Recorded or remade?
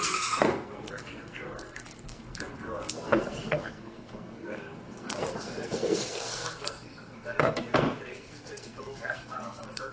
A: remade